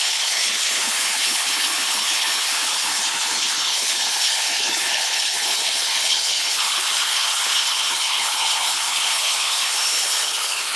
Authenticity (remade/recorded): remade